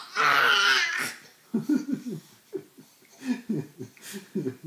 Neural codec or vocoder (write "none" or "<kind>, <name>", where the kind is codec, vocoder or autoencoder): none